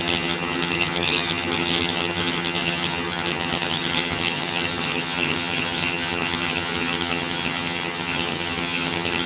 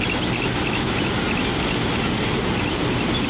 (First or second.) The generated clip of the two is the first